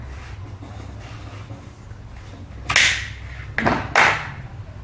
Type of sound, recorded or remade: recorded